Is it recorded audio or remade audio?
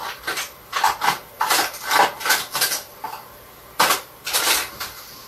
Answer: recorded